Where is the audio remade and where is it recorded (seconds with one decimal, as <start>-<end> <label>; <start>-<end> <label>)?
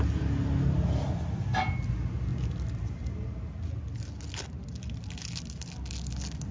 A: 0.0-6.5 recorded